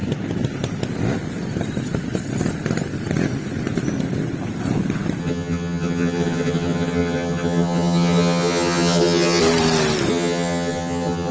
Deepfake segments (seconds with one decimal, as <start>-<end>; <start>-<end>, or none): 5.2-9.4; 10.1-11.3

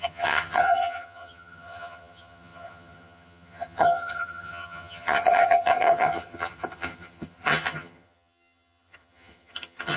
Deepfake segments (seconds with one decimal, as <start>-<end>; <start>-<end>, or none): 0.0-10.0

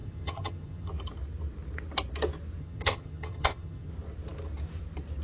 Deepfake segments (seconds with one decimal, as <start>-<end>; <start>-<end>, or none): 0.0-0.9; 2.6-3.9

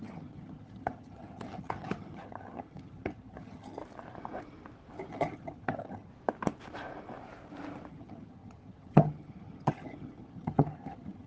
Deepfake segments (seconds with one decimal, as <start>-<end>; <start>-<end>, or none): 0.0-3.8; 5.1-6.1; 7.9-11.3

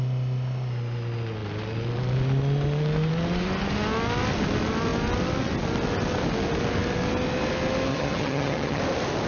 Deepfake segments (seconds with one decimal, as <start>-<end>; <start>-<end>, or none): 7.9-8.8

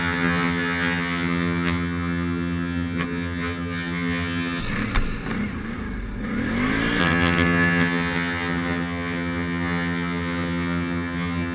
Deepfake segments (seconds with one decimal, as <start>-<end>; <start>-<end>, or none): 0.0-4.6; 7.0-11.5

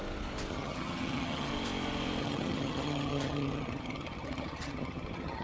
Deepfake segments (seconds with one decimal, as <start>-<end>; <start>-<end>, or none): 0.5-1.5; 2.2-5.4

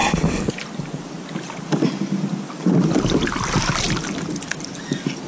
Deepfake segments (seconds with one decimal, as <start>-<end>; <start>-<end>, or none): none